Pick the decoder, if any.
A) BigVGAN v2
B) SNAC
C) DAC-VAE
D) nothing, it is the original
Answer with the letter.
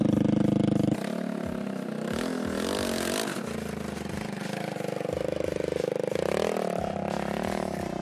D